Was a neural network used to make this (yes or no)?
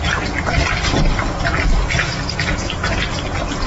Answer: no